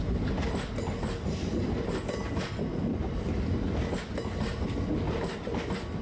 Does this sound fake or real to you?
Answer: real